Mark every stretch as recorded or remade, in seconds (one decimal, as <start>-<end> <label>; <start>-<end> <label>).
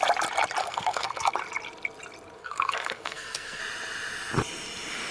0.0-0.6 recorded; 0.6-1.3 remade; 1.3-2.4 recorded; 2.4-3.6 remade; 3.6-5.1 recorded